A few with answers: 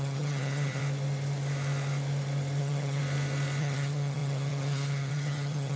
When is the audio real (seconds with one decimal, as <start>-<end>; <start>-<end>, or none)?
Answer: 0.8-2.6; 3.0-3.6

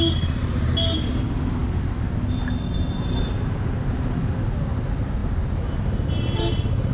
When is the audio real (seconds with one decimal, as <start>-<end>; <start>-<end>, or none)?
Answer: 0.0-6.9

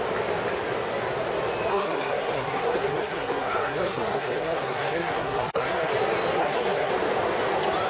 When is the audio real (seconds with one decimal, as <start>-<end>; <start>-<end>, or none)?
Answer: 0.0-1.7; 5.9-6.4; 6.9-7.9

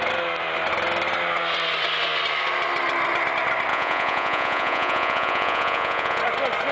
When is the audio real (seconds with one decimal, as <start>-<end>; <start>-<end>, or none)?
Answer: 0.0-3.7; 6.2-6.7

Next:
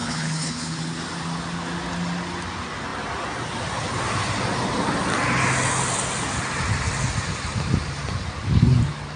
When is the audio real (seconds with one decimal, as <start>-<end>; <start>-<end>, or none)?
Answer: 0.8-9.2